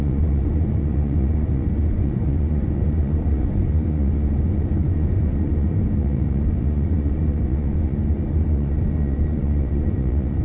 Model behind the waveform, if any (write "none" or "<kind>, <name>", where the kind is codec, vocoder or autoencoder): vocoder, Vocos